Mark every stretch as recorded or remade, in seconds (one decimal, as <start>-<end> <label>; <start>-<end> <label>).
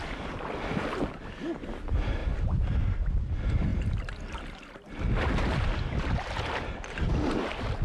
0.0-2.2 recorded; 2.2-2.8 remade; 2.8-7.8 recorded